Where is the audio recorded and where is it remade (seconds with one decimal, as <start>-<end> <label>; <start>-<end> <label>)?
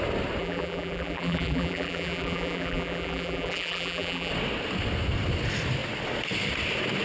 0.0-0.4 recorded; 0.4-4.3 remade; 4.3-7.0 recorded